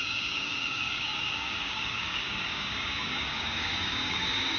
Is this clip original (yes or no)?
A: no